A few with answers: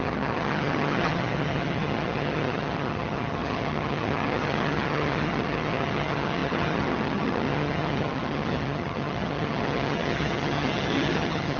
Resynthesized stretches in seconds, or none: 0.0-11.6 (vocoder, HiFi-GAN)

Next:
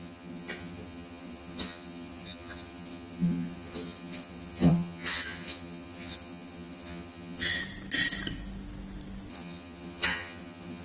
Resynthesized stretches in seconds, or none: 0.0-7.6 (vocoder, HiFi-GAN); 9.3-10.8

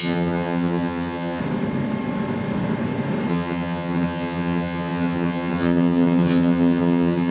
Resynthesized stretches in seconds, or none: 0.0-1.4 (vocoder, HiFi-GAN); 3.3-7.3